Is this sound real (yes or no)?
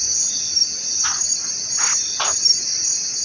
yes